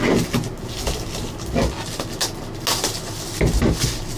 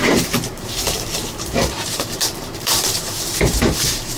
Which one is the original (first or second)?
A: first